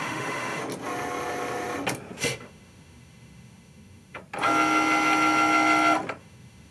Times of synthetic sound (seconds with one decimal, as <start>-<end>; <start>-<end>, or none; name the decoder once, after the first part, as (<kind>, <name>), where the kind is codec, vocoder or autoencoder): 0.0-0.6 (autoencoder, DAC-VAE); 2.2-4.2; 6.2-6.7